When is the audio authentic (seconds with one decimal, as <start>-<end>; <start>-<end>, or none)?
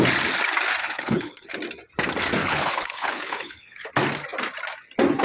0.0-0.8; 1.5-2.4; 3.9-5.2